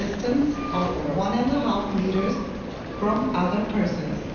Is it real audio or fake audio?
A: real